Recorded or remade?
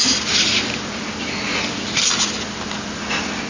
recorded